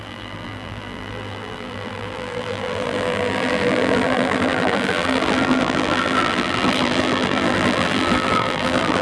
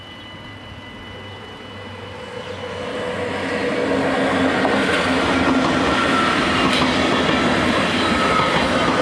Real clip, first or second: second